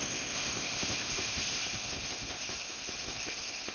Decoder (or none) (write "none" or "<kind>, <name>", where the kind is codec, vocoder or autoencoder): codec, ZipCodec